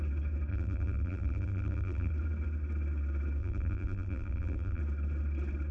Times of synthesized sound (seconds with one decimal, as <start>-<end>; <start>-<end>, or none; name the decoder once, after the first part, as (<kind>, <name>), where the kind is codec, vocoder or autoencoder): 0.5-2.1 (vocoder, BigVGAN v2); 3.4-4.8